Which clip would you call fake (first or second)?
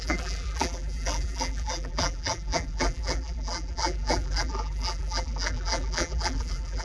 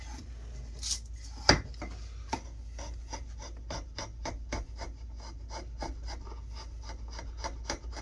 first